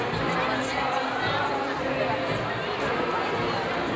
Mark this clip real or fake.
real